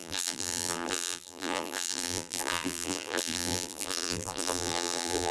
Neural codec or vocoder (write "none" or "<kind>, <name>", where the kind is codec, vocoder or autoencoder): vocoder, BigVGAN v2